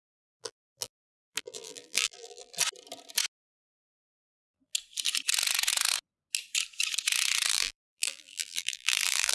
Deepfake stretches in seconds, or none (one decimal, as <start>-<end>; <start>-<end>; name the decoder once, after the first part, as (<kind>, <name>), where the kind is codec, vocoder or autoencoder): 0.0-2.5 (vocoder, BigVGAN v2); 3.6-4.7; 7.5-9.3